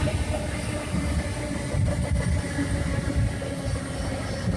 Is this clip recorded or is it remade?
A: recorded